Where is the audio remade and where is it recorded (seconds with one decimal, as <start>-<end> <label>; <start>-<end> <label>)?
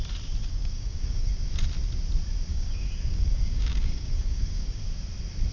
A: 0.0-0.4 recorded; 0.4-1.3 remade; 1.3-2.5 recorded; 2.5-4.8 remade; 4.8-5.5 recorded